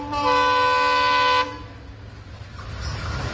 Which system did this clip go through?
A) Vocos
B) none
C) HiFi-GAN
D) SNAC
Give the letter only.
B